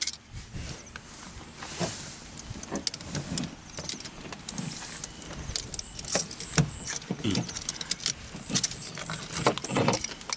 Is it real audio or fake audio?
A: real